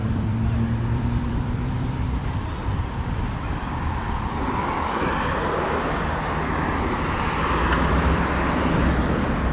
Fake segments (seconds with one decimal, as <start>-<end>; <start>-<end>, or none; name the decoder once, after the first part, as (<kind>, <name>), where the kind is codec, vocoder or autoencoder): 0.0-3.7 (vocoder, BigVGAN v2)